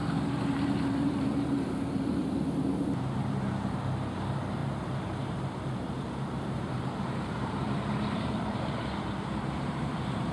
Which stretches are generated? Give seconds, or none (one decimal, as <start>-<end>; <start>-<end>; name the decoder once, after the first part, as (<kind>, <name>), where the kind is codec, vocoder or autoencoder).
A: 0.0-10.3 (vocoder, BigVGAN v2)